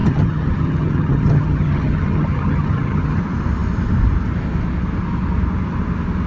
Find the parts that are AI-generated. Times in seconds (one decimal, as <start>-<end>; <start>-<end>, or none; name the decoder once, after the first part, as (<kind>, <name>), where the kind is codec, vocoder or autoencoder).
0.0-3.2 (vocoder, HiFi-GAN)